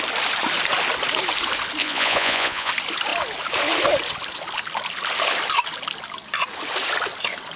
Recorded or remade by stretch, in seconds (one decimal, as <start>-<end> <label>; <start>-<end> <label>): 0.0-1.8 recorded; 1.8-2.7 remade; 2.7-7.6 recorded